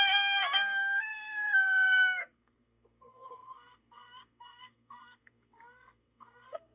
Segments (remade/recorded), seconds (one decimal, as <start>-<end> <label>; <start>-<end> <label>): 0.0-6.7 remade